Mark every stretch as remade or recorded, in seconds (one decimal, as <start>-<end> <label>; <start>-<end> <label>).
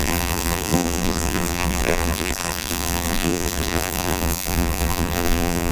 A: 0.0-5.7 remade